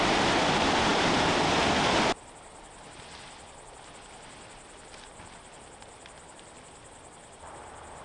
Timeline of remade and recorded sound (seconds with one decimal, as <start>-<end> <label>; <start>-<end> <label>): 0.0-8.0 recorded